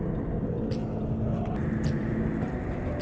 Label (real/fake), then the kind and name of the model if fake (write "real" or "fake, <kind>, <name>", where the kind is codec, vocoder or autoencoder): real